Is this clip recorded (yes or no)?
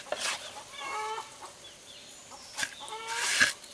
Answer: yes